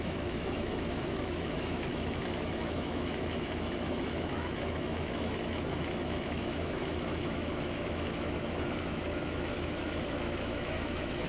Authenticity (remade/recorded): remade